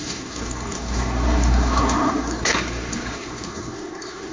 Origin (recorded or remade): remade